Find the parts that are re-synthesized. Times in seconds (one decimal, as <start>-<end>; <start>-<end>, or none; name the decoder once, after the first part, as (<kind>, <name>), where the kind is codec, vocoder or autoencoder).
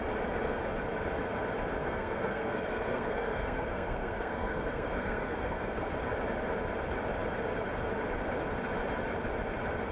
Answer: 1.8-5.9 (codec, SNAC)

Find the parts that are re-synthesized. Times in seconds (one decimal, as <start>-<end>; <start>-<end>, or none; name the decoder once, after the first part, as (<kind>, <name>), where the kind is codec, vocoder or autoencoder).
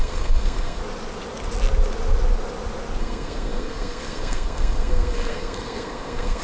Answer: 0.0-0.8 (codec, SNAC); 3.0-6.4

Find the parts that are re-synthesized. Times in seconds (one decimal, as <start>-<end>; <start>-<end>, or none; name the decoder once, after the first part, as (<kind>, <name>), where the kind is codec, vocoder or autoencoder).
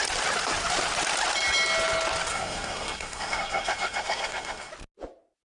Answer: 2.3-4.7 (codec, SNAC)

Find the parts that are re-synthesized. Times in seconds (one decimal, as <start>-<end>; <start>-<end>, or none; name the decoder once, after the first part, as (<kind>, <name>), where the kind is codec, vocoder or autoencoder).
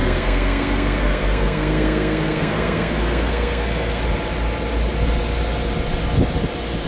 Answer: 0.0-4.0 (codec, SNAC)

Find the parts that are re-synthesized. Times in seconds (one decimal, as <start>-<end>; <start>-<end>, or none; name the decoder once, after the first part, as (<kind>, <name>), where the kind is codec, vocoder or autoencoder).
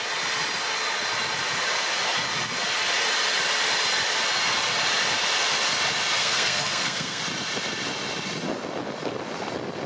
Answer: 6.2-7.2 (codec, SNAC)